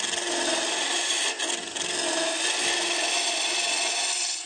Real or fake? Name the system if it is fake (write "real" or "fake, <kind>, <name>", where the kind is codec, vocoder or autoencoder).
real